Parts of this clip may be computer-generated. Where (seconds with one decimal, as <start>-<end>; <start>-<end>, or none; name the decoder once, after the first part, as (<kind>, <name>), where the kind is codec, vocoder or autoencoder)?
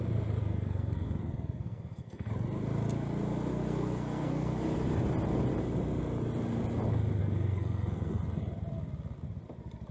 0.4-2.3 (codec, SNAC); 3.5-4.6; 7.2-8.2